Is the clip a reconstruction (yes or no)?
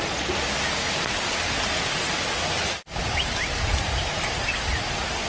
no